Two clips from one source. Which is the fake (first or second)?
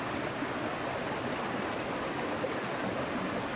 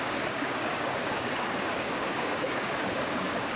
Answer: second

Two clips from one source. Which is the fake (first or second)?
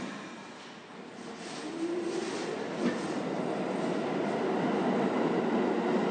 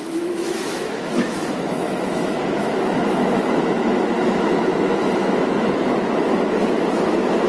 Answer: second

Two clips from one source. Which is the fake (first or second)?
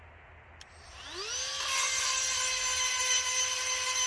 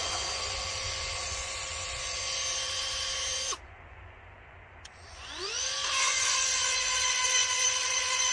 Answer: second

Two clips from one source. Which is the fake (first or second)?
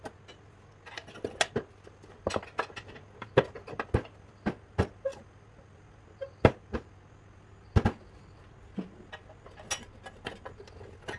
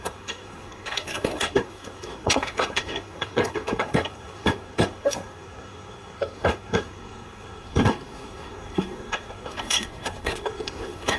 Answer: second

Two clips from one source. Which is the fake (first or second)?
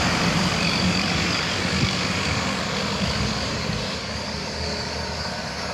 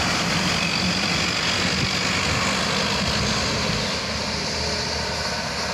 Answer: first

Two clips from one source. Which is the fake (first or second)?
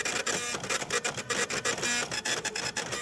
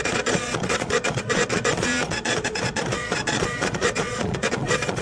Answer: second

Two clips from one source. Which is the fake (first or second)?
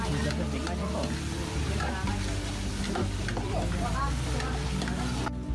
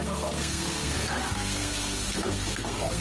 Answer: second